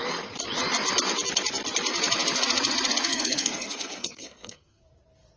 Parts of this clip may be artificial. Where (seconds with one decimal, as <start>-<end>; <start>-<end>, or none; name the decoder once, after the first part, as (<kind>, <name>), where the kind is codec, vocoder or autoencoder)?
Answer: 3.1-4.9 (codec, SNAC)